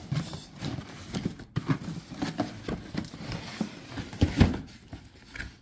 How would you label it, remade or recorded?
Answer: recorded